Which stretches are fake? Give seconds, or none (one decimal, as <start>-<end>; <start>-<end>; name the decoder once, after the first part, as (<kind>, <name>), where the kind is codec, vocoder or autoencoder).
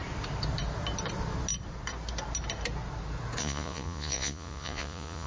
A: 3.4-5.3 (vocoder, Vocos)